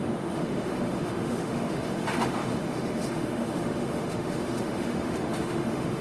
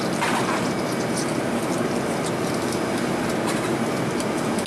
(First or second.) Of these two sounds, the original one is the second